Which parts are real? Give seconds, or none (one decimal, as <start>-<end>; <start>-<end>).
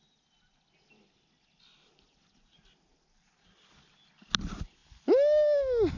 0.0-6.0